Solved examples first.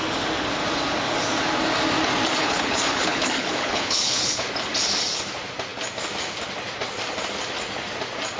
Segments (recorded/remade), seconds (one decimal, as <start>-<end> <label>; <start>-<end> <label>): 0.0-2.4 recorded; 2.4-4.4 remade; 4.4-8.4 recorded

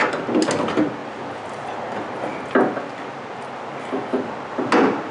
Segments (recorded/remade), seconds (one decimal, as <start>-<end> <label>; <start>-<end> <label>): 0.0-1.0 recorded; 1.0-1.7 remade; 1.7-5.1 recorded

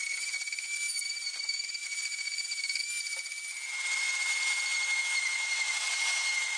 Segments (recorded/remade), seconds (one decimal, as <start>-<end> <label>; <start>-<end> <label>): 0.0-6.6 recorded

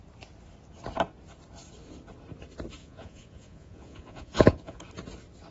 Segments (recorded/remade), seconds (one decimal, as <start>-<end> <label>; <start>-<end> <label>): 0.0-2.8 recorded; 2.8-4.8 remade; 4.8-5.5 recorded

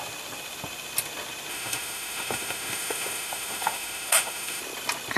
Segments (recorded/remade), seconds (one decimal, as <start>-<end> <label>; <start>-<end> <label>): 0.0-1.5 recorded; 1.5-4.6 remade; 4.6-5.2 recorded